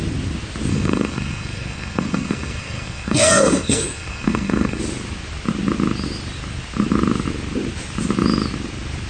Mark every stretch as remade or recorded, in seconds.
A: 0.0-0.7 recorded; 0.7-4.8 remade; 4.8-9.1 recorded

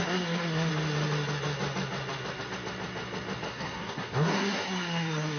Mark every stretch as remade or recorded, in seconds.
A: 0.0-0.7 remade; 0.7-3.5 recorded; 3.5-5.4 remade

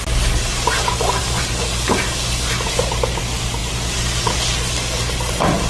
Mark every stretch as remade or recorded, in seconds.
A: 0.0-5.7 recorded

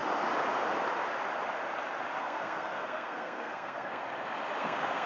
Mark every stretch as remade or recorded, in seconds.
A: 0.0-2.2 recorded; 2.2-4.0 remade; 4.0-4.6 recorded; 4.6-5.1 remade

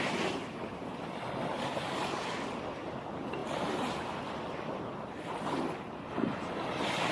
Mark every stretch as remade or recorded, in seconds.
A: 0.0-7.1 recorded